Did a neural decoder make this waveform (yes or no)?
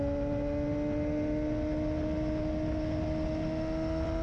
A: no